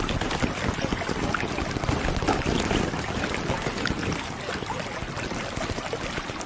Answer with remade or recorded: recorded